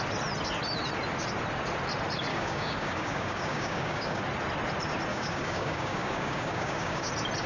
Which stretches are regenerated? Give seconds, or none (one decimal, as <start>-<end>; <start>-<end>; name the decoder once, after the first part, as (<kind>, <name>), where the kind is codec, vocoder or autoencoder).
2.3-4.2 (codec, DAC); 5.1-7.1